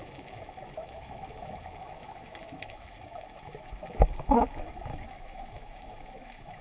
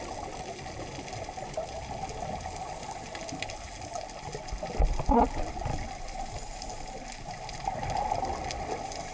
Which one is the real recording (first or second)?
second